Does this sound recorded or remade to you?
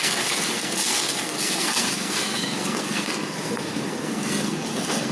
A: remade